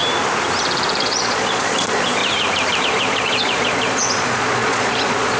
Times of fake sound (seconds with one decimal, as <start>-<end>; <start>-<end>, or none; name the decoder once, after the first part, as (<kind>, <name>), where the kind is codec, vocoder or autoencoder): 1.0-2.2 (vocoder, Vocos); 2.8-5.4